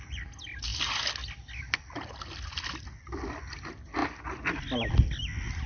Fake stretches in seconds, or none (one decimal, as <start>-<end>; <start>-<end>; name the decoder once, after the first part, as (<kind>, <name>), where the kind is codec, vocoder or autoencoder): none